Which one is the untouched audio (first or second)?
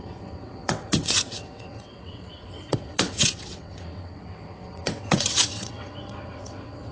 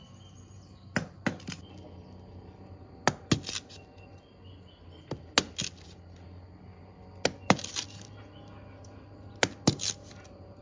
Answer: second